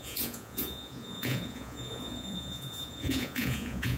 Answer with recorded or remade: remade